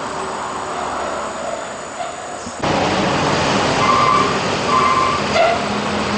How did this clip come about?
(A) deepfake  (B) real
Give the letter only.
B